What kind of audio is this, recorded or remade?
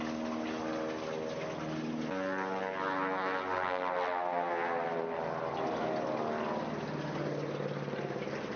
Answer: recorded